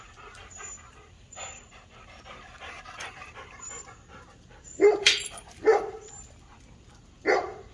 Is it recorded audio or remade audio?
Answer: remade